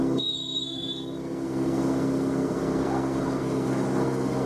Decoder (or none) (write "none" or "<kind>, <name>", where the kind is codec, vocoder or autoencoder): codec, SNAC